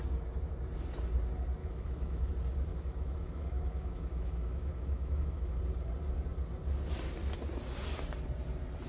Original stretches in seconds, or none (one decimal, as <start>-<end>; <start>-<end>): 0.0-1.6; 2.3-2.7; 5.6-8.9